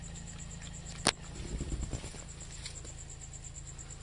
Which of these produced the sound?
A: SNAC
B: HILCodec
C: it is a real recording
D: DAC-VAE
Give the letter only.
C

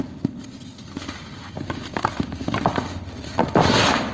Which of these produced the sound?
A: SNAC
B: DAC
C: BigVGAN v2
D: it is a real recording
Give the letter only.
D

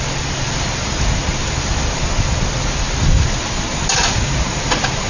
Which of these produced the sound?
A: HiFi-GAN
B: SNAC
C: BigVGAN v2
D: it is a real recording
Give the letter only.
D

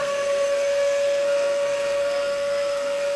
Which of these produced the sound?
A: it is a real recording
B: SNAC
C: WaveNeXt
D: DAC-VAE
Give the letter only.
B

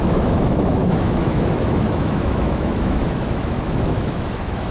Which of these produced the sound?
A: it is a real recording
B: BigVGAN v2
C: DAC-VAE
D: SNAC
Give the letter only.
C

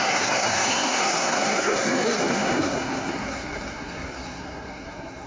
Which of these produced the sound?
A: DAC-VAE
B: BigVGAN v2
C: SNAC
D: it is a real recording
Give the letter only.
C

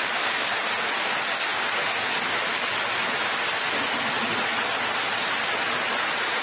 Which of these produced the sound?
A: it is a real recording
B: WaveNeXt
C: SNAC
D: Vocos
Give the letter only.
A